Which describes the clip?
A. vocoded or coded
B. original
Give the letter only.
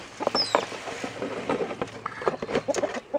B